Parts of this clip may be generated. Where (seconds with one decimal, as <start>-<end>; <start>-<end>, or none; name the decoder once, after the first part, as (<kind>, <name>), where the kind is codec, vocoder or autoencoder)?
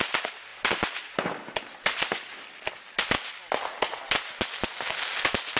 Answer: none